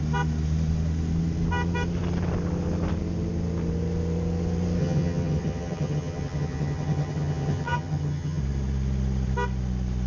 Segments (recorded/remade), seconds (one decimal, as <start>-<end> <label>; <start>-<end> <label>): 0.0-4.8 recorded; 4.8-8.4 remade; 8.4-10.1 recorded